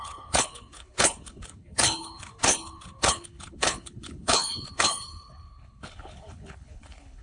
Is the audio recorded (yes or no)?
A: no